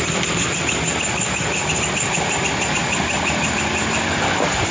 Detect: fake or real real